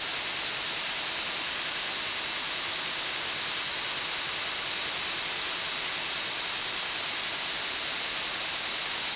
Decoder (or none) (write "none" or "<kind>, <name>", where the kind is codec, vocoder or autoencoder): none